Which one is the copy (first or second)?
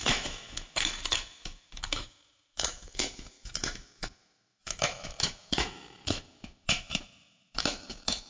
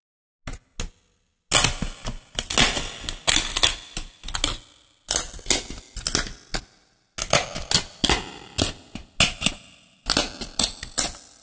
first